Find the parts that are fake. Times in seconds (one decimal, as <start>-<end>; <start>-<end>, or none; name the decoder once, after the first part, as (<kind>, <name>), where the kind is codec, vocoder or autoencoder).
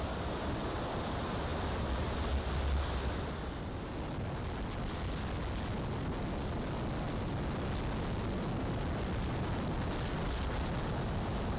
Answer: none